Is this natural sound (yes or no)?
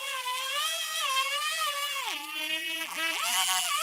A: no